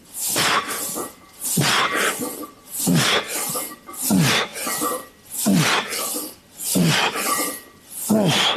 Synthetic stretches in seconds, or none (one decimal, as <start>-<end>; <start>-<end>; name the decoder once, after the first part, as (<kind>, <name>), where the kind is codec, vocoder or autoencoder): 4.5-6.1 (vocoder, BigVGAN v2); 6.6-8.6